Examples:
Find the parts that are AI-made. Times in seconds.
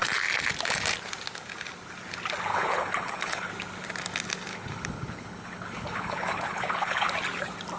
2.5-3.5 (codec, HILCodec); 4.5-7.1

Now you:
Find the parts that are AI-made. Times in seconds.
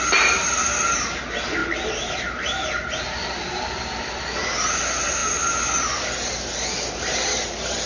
0.0-1.6 (vocoder, BigVGAN v2); 2.1-5.2; 6.9-7.9